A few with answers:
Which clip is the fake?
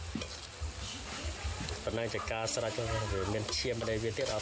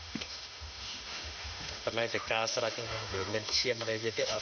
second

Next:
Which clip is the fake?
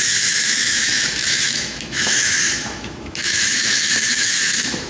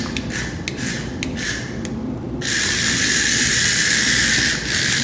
first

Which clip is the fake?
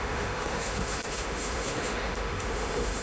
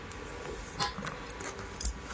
first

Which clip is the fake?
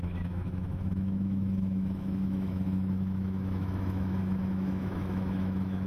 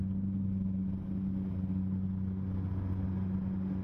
first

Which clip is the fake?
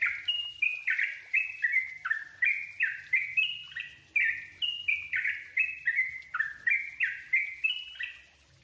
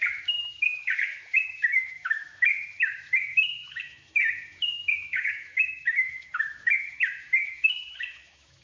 second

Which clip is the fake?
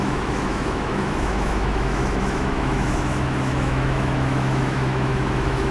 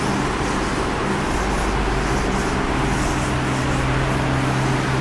first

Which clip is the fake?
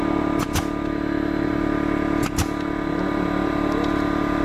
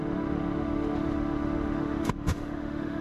second